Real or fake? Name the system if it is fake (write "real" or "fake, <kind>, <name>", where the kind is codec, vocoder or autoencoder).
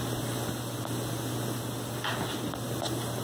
real